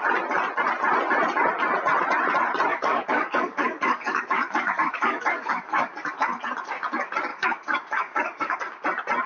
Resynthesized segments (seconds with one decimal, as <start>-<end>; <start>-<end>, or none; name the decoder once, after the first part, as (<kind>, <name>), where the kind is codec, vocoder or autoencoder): 2.7-6.4 (codec, DAC); 7.3-8.6

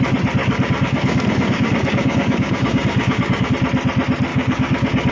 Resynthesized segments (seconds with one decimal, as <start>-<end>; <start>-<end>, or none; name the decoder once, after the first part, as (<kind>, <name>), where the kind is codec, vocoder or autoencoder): 0.4-3.5 (codec, DAC); 4.3-5.1

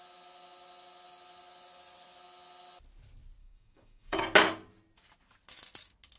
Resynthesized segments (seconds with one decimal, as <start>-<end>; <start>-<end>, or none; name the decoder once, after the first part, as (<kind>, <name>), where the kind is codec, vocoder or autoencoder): 3.4-4.2 (codec, DAC)

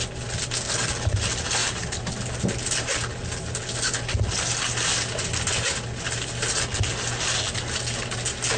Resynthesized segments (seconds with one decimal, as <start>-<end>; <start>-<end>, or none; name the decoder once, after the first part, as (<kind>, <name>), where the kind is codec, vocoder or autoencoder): none

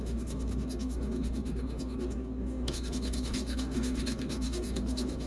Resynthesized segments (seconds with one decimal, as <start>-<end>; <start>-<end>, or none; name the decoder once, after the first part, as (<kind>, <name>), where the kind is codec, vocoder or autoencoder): 0.0-5.3 (codec, DAC)

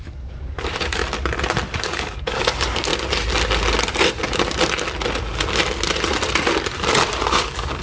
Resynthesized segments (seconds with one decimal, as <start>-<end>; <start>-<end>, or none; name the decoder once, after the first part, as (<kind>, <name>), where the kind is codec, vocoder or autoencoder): 0.0-1.0 (codec, DAC); 1.8-2.9; 7.3-7.8